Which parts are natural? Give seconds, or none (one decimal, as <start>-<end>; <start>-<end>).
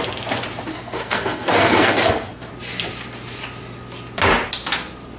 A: 0.0-0.7; 2.5-5.2